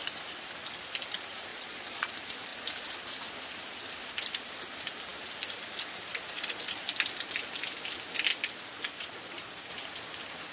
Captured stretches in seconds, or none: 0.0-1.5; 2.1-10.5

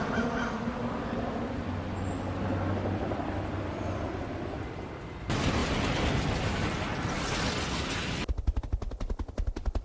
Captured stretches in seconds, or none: 0.0-9.8

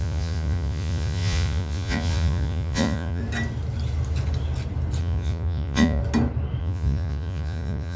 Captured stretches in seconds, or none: 3.2-5.0; 6.0-6.6

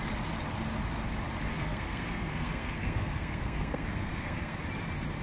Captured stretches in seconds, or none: 0.0-1.5; 4.6-5.2

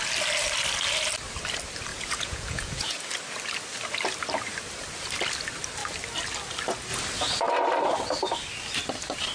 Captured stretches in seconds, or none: 0.0-1.9; 3.0-9.3

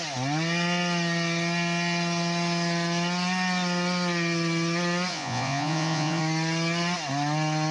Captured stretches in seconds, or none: 0.0-5.1; 6.2-7.7

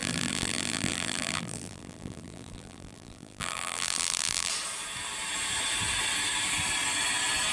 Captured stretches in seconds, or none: 4.5-7.5

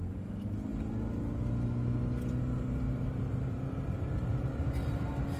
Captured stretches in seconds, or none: 0.0-5.4